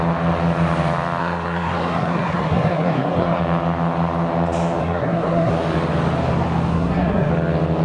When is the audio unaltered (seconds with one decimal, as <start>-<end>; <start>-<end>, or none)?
0.0-1.2; 3.4-4.8; 5.5-6.7; 7.3-7.8